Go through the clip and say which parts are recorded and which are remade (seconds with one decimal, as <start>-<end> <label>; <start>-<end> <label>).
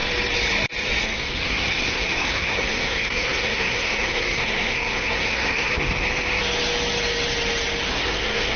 0.0-1.0 recorded; 1.0-5.7 remade; 5.7-7.9 recorded; 7.9-8.6 remade